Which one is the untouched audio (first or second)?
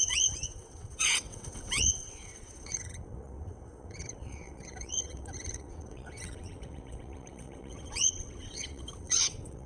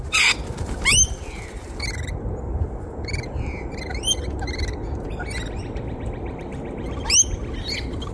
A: second